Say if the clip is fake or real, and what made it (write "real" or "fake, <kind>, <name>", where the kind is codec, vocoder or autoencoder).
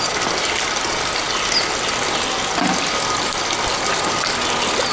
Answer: real